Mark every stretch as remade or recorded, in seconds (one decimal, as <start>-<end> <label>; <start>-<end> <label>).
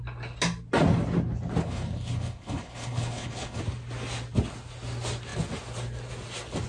0.0-1.6 recorded; 1.6-3.6 remade; 3.6-6.7 recorded